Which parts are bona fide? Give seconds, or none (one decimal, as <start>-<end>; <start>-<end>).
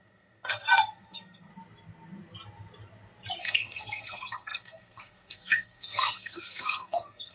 1.5-3.4